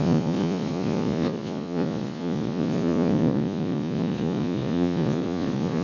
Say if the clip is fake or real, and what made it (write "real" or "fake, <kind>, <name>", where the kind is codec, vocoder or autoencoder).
fake, vocoder, Vocos